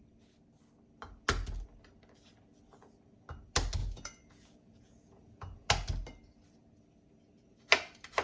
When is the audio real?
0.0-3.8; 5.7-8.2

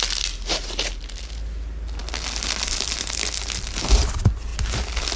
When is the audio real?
0.0-5.2